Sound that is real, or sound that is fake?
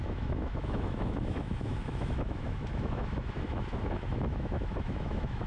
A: fake